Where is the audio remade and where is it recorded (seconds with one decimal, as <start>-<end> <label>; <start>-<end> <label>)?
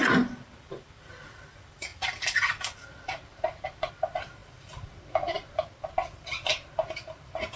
0.0-1.9 recorded; 1.9-3.9 remade; 3.9-4.4 recorded; 4.4-6.7 remade; 6.7-7.6 recorded